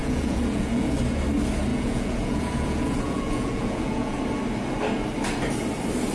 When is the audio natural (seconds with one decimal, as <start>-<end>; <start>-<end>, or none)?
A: 1.0-1.7; 4.2-6.1